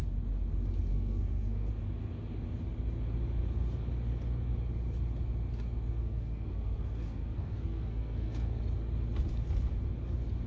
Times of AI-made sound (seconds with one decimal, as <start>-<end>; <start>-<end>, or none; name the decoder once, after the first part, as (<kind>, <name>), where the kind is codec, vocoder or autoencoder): 0.9-1.7 (codec, SNAC); 6.0-8.6